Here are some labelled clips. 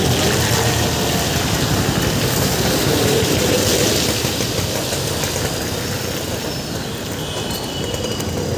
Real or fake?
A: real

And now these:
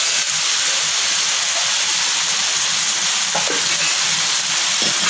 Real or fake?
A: real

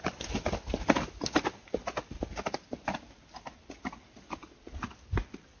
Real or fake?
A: real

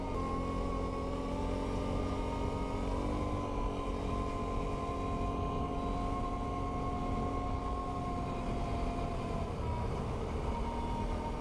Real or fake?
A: real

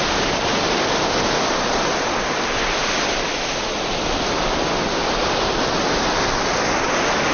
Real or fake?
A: real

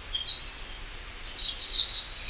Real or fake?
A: real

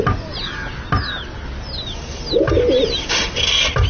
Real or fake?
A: real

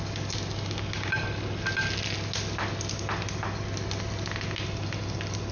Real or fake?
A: real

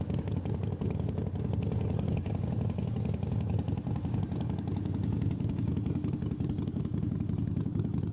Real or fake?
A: fake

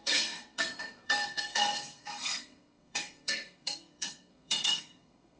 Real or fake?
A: fake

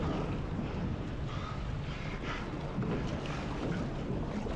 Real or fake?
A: real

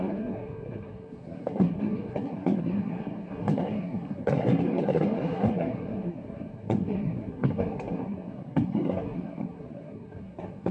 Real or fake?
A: fake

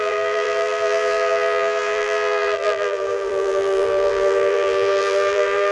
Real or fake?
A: fake